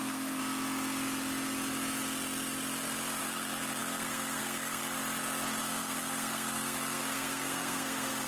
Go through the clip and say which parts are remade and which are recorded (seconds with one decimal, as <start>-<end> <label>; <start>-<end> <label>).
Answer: 0.0-0.4 remade; 0.4-3.2 recorded; 3.2-5.0 remade; 5.0-5.6 recorded; 5.6-8.3 remade